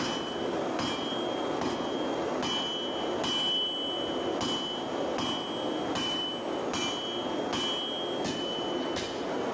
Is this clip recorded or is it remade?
recorded